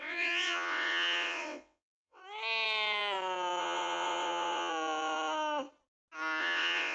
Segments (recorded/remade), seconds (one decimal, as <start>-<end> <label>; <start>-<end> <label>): 0.0-2.2 remade; 2.2-3.6 recorded; 3.6-4.7 remade; 4.7-6.4 recorded; 6.4-6.9 remade